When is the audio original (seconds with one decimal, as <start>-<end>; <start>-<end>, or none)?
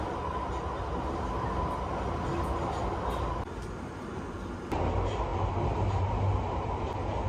0.0-7.3